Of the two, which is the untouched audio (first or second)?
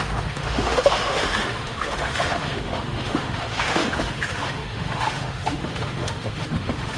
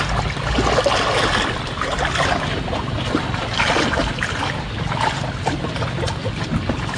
second